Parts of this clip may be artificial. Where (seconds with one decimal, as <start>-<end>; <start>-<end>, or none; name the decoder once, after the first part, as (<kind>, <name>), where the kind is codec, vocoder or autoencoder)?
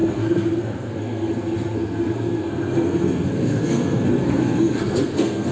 0.0-5.5 (codec, SNAC)